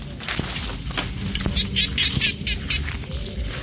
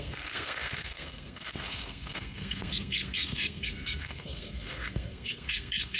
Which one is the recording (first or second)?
first